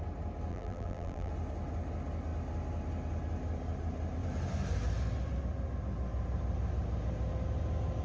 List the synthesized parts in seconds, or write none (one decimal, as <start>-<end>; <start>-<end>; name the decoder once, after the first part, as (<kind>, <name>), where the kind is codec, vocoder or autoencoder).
0.5-1.3 (vocoder, BigVGAN v2)